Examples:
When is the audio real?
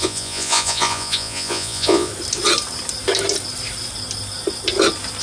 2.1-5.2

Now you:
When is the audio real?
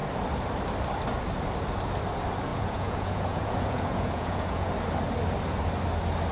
0.0-2.5; 4.7-6.3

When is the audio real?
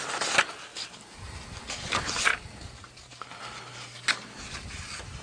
0.0-5.2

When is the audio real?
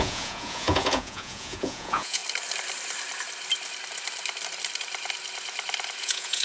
2.2-6.0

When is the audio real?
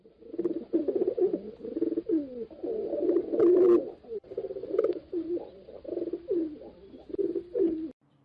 0.0-4.6; 5.3-8.2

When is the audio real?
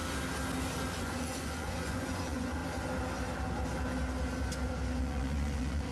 0.0-1.0; 2.6-5.0